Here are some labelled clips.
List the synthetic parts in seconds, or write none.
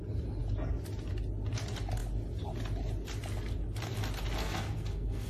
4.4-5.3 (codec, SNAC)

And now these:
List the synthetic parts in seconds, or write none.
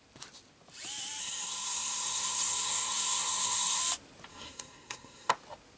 1.2-3.8 (codec, SNAC); 4.3-5.3